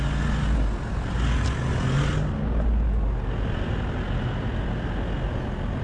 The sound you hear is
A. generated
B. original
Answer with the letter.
B